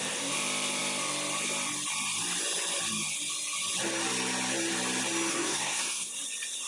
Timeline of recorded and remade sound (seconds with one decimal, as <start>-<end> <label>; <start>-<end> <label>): 0.0-5.3 recorded; 5.3-6.1 remade; 6.1-6.7 recorded